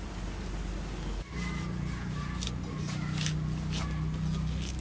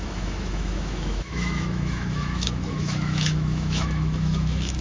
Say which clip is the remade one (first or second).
second